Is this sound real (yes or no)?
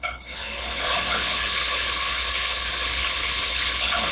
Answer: no